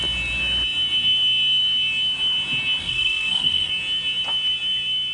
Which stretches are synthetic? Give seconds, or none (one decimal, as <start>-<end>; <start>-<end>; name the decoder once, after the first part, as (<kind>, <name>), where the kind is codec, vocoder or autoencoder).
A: 2.8-3.7 (codec, SNAC)